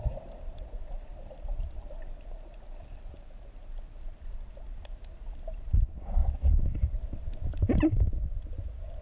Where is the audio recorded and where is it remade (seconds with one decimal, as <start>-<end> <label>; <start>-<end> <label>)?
0.0-9.0 recorded